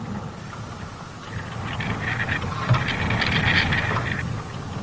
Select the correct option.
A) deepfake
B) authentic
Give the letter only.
B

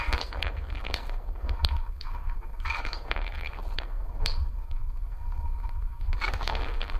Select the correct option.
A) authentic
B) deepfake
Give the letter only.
B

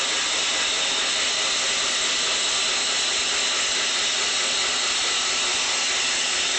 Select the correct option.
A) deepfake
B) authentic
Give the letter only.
B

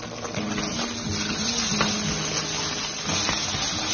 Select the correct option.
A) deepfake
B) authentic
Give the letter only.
B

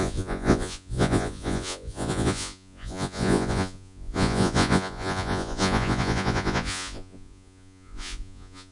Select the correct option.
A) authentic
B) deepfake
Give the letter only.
B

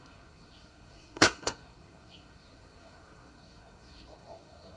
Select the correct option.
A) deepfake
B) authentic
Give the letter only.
A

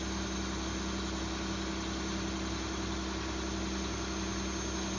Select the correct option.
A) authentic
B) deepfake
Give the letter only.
A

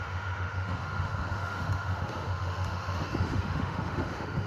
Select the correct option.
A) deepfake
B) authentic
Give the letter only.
A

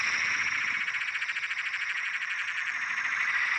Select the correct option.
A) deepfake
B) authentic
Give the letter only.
B